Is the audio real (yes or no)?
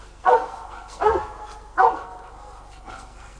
no